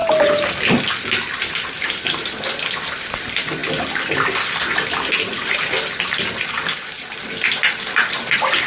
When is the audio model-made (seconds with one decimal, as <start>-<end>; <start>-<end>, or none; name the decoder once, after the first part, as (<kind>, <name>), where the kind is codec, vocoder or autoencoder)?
0.0-0.5 (vocoder, BigVGAN v2)